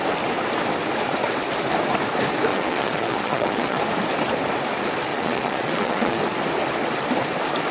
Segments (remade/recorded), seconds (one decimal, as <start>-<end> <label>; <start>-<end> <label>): 0.0-2.5 recorded; 2.5-3.8 remade; 3.8-5.1 recorded; 5.1-6.2 remade; 6.2-7.7 recorded